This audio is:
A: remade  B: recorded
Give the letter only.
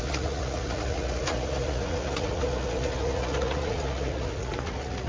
A